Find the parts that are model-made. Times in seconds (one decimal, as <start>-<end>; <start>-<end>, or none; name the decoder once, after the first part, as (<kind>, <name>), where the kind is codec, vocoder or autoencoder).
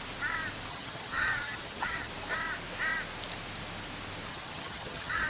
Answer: 0.7-2.1 (vocoder, HiFi-GAN); 4.3-5.3